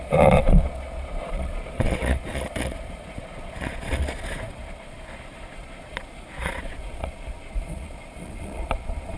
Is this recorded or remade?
remade